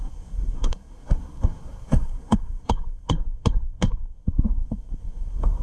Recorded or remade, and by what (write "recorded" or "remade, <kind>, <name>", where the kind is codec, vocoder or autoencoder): remade, codec, SNAC